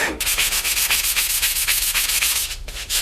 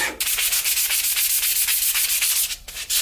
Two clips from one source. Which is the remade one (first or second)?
first